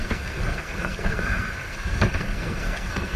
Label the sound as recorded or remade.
remade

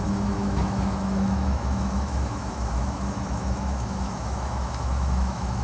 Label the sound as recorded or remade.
remade